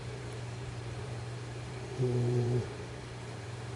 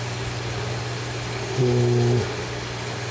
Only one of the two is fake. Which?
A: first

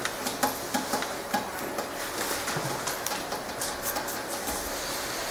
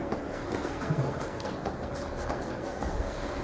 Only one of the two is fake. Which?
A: second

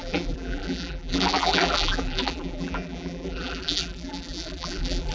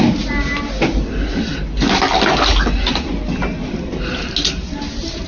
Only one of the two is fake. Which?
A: first